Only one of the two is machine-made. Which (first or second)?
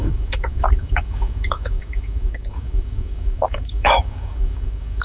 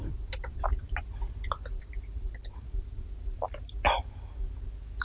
first